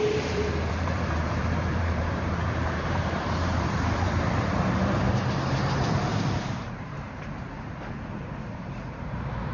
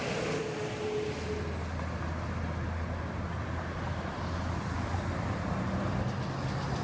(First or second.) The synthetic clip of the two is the first